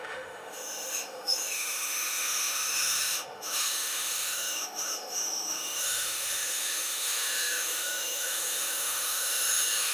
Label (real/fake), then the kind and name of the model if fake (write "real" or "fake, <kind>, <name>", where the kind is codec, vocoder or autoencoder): fake, autoencoder, DAC-VAE